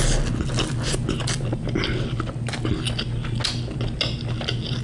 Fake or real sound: real